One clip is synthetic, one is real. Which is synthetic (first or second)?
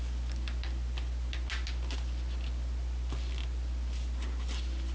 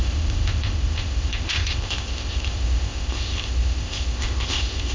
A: second